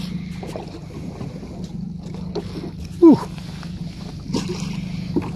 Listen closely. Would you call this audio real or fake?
real